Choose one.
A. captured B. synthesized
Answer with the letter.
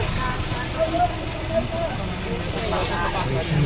A